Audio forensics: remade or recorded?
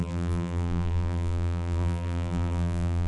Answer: remade